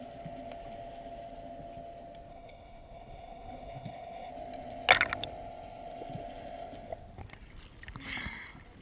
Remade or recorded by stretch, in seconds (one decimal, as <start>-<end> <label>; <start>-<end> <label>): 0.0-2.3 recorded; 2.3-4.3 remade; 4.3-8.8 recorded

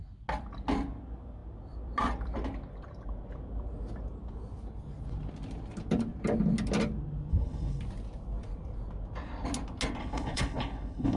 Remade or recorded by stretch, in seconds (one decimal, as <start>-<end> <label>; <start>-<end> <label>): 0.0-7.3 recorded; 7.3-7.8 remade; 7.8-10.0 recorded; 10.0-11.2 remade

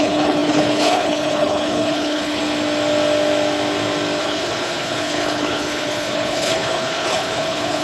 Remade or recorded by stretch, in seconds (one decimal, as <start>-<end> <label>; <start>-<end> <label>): 0.0-2.4 remade; 2.4-4.2 recorded; 4.2-7.8 remade

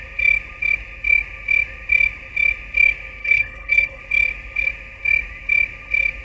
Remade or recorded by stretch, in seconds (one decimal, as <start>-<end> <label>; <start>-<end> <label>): 0.0-3.2 recorded; 3.2-4.0 remade; 4.0-6.2 recorded

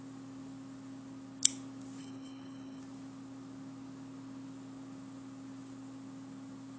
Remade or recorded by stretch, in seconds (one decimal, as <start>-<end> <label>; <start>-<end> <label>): 0.0-2.0 recorded; 2.0-2.8 remade; 2.8-6.8 recorded

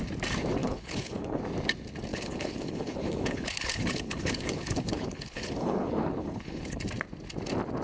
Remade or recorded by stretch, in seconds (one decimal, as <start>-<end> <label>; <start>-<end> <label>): 0.0-0.6 recorded; 0.6-1.4 remade; 1.4-2.1 recorded; 2.1-6.8 remade; 6.8-7.8 recorded

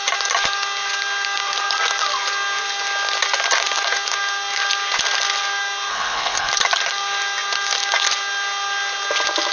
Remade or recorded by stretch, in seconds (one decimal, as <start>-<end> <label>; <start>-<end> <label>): 0.0-5.9 recorded; 5.9-6.5 remade; 6.5-9.5 recorded